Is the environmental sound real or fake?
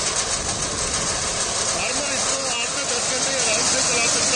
real